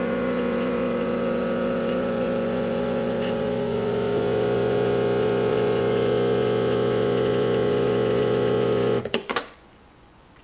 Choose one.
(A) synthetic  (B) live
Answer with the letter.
A